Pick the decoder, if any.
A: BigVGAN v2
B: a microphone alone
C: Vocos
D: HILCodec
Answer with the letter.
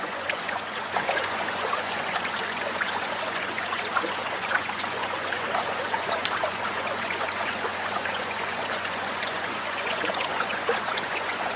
C